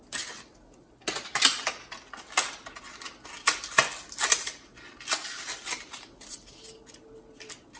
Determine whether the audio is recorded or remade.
recorded